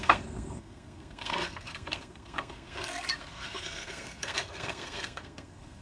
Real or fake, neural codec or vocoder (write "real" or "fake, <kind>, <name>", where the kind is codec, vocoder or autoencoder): fake, codec, SNAC